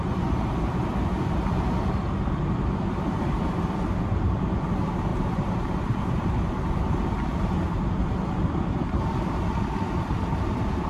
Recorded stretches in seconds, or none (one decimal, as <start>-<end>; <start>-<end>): 0.0-5.1; 6.5-10.9